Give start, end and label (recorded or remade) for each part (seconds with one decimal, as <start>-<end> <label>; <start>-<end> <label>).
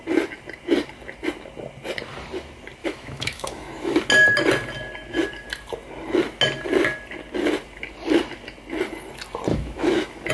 0.0-2.8 recorded; 2.8-4.0 remade; 4.0-9.5 recorded; 9.5-10.3 remade